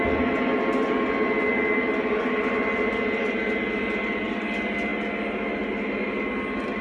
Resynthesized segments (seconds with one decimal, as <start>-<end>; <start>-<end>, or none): none